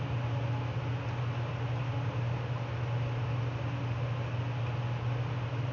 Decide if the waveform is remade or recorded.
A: recorded